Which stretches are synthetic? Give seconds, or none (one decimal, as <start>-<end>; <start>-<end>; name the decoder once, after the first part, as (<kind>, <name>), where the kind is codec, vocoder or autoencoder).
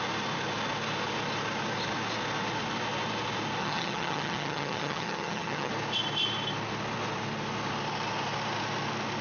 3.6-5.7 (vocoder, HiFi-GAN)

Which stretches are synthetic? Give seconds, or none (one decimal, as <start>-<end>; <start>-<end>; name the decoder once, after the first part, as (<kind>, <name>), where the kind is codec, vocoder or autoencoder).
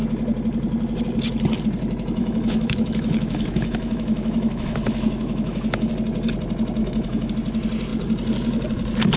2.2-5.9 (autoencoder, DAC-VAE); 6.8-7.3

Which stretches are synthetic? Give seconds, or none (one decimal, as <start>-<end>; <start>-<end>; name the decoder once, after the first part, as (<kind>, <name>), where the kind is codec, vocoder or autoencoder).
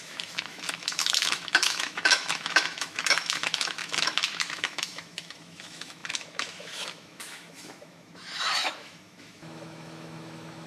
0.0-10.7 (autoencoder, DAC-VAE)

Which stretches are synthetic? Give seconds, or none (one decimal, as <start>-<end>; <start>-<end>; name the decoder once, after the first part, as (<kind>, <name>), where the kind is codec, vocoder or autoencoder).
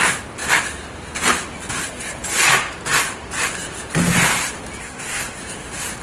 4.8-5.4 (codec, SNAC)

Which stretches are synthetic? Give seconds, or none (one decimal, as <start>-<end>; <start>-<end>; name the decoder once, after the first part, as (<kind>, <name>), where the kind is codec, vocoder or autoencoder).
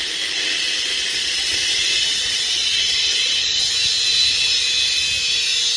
1.1-3.6 (vocoder, Vocos)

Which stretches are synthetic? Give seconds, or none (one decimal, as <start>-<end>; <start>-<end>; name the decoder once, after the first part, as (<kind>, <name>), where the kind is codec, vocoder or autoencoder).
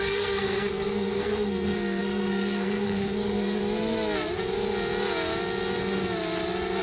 0.0-3.6 (codec, SNAC)